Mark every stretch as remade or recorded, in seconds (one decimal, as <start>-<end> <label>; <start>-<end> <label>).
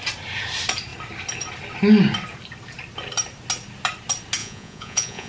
0.0-4.4 recorded; 4.4-5.3 remade